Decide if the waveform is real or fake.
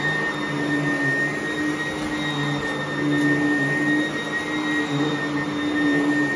real